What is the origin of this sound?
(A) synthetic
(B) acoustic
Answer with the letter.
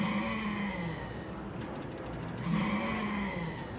B